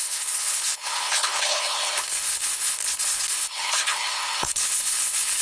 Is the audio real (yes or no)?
no